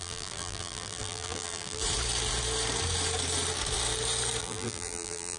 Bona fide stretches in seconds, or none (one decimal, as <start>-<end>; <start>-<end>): 1.8-4.4